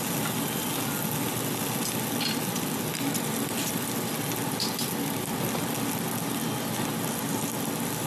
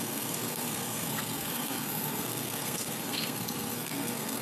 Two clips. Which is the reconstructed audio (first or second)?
second